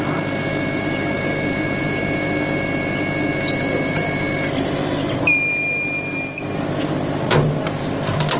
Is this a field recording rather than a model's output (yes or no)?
yes